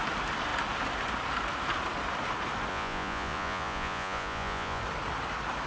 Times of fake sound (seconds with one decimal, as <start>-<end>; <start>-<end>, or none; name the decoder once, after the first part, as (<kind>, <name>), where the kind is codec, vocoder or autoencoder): 2.7-4.8 (vocoder, Vocos)